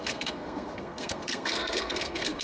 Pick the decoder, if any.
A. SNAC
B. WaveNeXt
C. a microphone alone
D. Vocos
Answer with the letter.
A